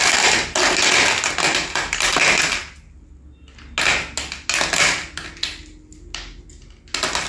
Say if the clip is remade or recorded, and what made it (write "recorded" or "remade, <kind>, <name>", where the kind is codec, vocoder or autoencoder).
recorded